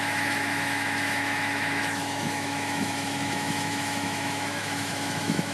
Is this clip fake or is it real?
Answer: fake